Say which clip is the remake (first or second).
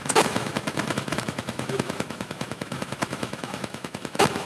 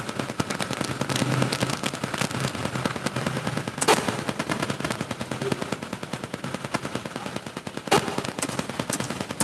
first